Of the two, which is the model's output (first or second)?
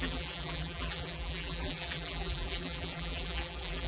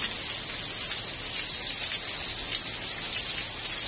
first